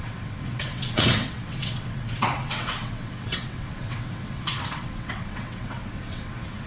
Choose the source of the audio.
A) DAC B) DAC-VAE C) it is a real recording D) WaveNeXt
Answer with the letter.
D